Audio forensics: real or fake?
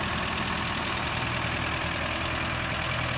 real